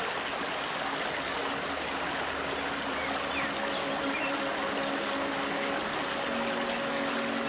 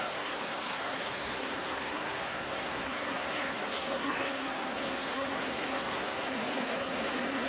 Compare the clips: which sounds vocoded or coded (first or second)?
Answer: second